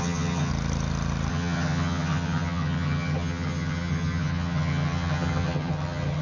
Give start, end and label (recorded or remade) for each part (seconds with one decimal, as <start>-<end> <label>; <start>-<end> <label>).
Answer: 0.0-0.5 remade; 0.5-1.3 recorded; 1.3-6.2 remade